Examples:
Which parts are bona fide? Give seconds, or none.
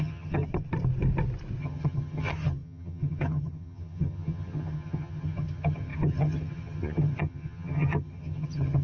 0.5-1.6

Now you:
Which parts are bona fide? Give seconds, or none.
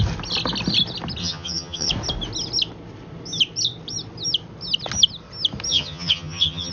0.0-1.2; 1.9-5.7